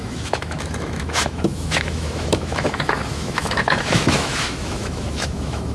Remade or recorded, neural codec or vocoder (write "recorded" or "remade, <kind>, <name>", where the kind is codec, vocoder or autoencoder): remade, autoencoder, DAC-VAE